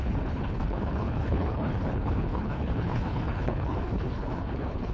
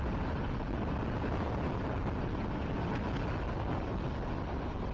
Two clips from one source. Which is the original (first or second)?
second